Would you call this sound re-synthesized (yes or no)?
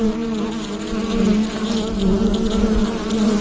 no